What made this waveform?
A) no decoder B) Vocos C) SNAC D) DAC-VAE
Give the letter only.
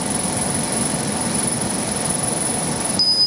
A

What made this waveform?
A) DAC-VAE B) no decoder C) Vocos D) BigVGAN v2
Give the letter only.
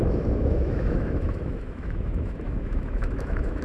A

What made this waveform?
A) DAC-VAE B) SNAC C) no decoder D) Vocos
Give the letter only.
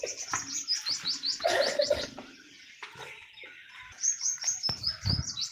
C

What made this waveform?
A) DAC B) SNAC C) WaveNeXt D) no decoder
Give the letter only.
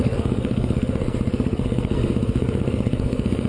B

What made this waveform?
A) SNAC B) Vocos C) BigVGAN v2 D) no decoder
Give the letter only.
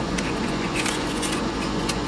B